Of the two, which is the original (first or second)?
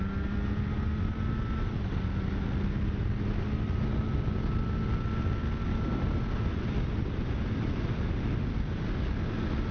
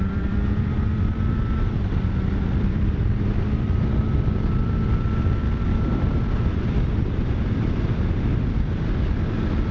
first